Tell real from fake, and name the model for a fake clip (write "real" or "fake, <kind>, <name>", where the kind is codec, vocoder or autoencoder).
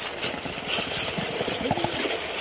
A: fake, vocoder, BigVGAN v2